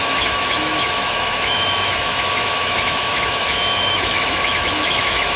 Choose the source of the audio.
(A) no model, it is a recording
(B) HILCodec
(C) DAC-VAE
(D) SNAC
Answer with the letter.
C